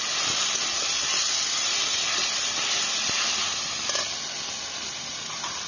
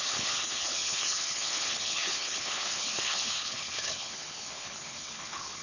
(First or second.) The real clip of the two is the first